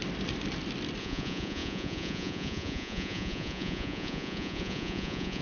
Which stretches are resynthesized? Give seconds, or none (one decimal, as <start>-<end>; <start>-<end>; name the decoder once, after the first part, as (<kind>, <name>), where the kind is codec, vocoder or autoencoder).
1.0-5.4 (vocoder, Vocos)